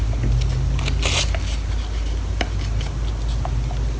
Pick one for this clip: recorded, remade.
recorded